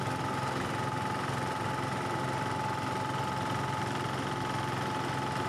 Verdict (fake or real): real